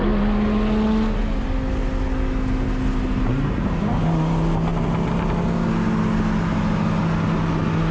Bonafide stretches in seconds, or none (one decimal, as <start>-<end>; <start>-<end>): 0.0-7.9